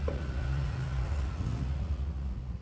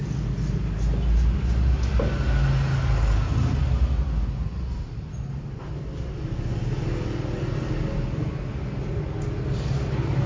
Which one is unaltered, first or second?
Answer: second